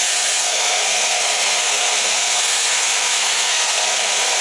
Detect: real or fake fake